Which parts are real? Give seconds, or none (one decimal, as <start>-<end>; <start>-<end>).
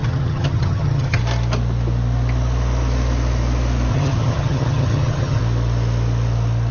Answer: 1.2-3.9; 5.4-6.7